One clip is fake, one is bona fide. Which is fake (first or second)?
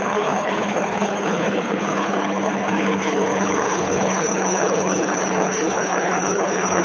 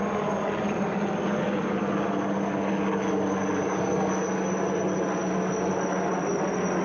first